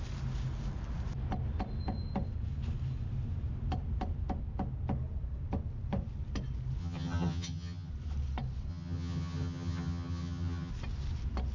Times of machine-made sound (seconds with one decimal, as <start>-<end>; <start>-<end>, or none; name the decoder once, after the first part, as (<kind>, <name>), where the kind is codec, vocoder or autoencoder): 6.8-7.9 (vocoder, HiFi-GAN); 8.7-10.7

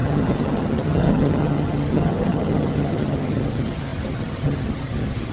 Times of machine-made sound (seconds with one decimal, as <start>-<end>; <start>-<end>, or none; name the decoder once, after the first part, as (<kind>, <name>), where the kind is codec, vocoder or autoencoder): 0.0-5.3 (vocoder, HiFi-GAN)